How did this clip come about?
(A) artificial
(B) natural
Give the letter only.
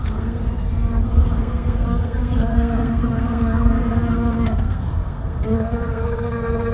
A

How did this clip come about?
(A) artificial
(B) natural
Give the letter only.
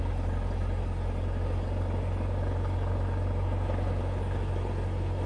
B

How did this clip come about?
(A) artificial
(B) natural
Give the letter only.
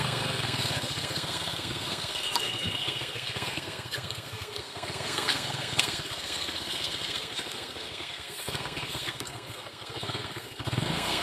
A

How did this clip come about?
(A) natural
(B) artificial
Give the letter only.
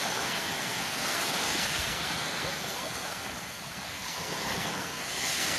B